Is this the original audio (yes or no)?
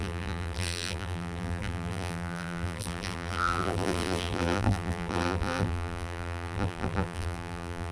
no